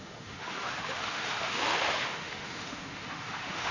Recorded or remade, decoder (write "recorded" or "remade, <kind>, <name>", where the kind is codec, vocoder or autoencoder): remade, autoencoder, DAC-VAE